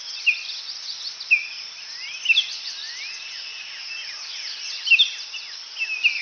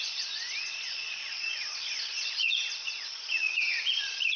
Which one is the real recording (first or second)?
first